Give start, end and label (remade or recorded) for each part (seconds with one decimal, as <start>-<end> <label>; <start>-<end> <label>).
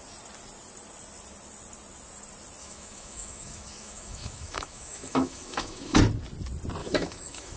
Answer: 0.0-2.6 recorded; 2.6-6.0 remade; 6.0-6.8 recorded; 6.8-7.6 remade